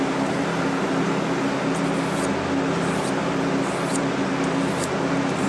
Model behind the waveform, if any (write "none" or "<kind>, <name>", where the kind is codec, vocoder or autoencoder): none